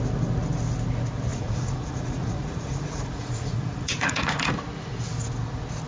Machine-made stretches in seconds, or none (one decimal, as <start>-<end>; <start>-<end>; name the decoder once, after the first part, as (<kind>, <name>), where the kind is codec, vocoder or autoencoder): 1.3-4.5 (vocoder, Vocos)